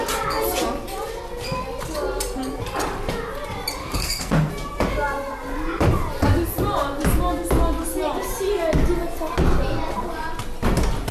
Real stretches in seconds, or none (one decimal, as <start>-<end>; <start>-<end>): 0.0-3.8; 4.5-11.1